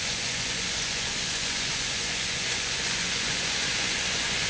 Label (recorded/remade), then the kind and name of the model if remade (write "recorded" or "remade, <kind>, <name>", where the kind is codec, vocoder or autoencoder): remade, vocoder, Vocos